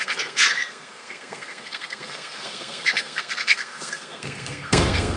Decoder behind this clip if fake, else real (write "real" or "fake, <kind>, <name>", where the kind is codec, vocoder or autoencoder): fake, codec, SNAC